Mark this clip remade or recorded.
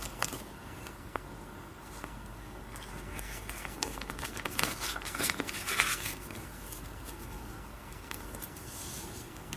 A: remade